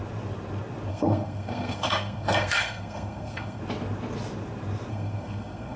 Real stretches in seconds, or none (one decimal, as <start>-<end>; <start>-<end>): 0.0-0.9; 3.6-4.9